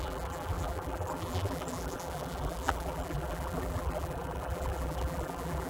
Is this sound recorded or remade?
remade